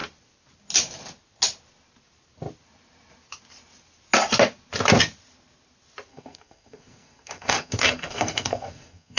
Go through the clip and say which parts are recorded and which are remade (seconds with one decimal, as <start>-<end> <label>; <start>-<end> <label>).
0.0-6.1 recorded; 6.1-9.2 remade